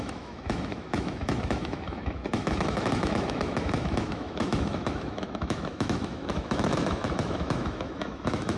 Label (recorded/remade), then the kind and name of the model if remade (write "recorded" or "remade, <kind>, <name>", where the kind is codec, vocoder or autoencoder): remade, autoencoder, DAC-VAE